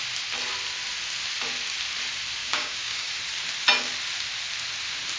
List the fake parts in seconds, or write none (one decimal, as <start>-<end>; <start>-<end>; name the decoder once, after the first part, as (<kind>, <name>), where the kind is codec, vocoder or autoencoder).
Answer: 2.4-3.1 (codec, DAC)